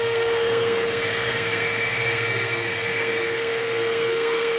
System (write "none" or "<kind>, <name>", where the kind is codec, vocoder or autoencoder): codec, SNAC